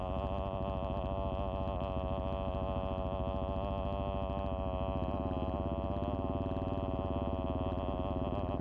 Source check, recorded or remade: recorded